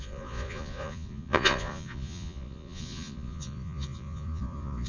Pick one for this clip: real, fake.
fake